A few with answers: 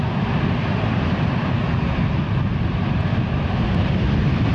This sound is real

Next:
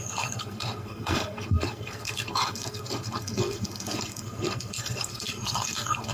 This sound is fake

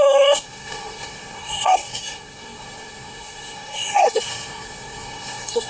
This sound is fake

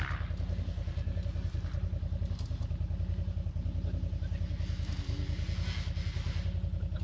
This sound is real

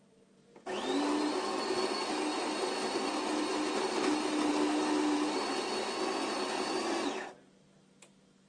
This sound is real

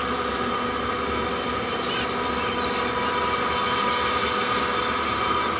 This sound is real